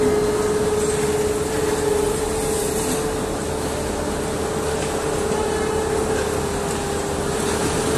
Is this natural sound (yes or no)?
yes